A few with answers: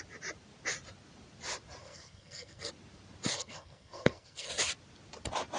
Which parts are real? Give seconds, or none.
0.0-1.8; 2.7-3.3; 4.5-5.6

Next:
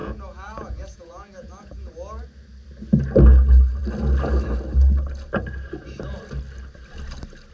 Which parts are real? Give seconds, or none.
1.9-7.5

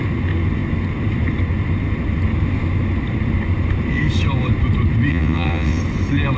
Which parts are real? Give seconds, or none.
0.0-5.1; 5.8-6.4

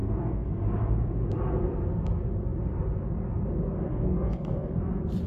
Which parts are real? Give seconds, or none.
0.5-3.9; 4.8-5.3